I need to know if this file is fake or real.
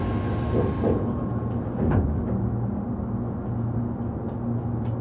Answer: real